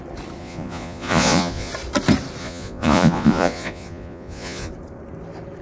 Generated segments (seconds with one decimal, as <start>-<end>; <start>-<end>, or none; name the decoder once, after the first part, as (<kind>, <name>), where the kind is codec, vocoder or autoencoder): 0.4-1.7 (vocoder, Vocos); 2.4-4.7